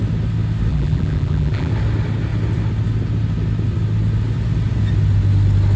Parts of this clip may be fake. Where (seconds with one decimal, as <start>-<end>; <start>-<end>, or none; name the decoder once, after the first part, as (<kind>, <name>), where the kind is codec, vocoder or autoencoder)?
0.7-1.7 (vocoder, BigVGAN v2)